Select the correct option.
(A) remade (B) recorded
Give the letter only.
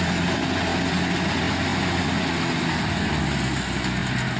B